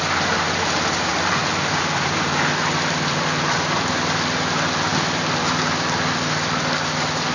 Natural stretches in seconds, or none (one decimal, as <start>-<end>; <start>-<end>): 0.0-1.1; 3.9-4.9; 5.4-7.3